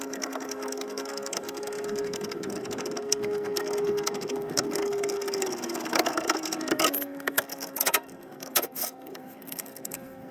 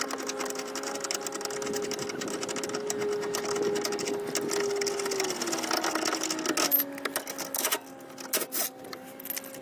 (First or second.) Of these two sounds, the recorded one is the second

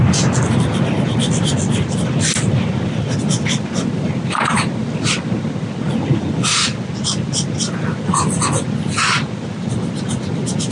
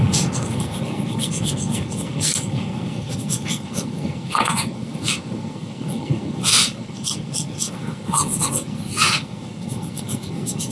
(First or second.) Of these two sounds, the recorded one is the first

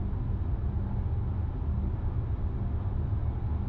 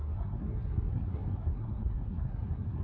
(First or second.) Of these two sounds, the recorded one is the first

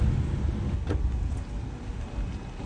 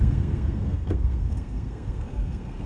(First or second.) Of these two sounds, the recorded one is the first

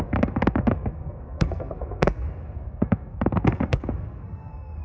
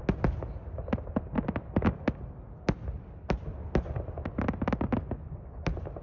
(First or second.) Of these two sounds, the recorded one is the second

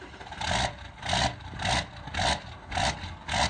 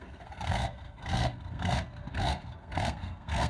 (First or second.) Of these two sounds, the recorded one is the first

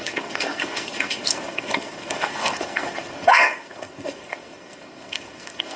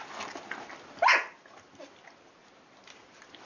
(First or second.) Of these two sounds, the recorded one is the second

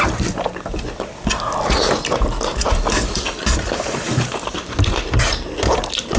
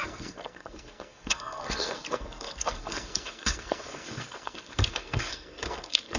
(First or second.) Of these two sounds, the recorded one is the first